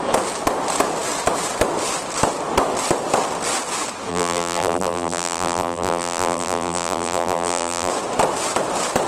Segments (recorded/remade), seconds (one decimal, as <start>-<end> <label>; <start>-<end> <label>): 0.0-4.1 recorded; 4.1-7.9 remade; 7.9-9.1 recorded